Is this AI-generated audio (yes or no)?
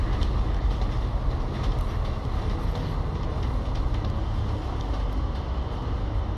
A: no